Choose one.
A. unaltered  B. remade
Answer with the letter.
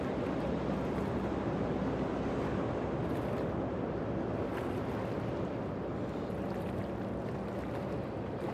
A